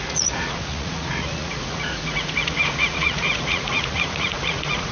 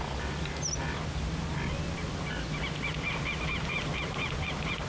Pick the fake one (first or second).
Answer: first